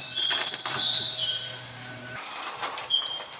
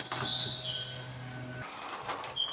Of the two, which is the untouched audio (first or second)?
second